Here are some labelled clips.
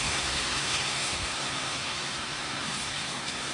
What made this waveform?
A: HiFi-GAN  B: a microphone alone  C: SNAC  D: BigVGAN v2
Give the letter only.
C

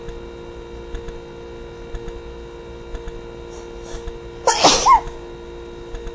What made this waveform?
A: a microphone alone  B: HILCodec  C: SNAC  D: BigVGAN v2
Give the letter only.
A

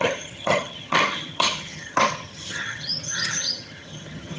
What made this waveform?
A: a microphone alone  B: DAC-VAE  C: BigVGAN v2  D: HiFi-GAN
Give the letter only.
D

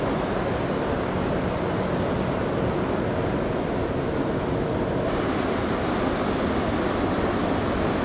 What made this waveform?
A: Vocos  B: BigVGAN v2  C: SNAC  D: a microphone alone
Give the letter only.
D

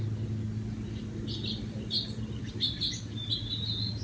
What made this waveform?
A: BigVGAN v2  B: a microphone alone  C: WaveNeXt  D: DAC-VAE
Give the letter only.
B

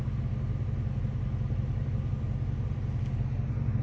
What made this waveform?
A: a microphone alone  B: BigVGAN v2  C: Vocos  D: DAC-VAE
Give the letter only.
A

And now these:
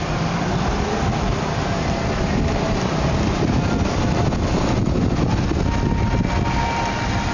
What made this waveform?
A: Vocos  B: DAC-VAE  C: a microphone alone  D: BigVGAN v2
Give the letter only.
C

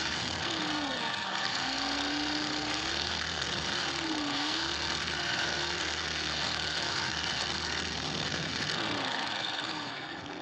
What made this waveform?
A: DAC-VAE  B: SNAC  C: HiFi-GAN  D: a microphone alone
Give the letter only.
B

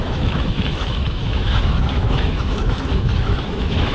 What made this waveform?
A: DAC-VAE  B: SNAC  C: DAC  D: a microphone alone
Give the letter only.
A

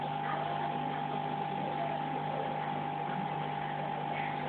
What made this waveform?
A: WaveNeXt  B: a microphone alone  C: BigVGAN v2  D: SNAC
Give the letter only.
B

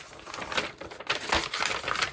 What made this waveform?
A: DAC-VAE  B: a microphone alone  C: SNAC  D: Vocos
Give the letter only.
B